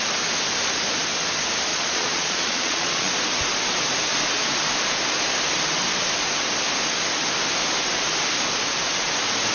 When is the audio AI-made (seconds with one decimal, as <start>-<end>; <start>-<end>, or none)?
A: 1.7-3.1